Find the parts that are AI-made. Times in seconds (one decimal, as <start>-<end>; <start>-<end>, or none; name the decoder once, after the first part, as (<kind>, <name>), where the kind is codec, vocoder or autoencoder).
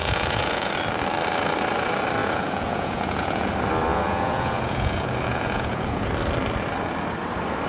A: 0.0-0.7 (vocoder, Vocos); 2.2-3.5; 3.9-6.0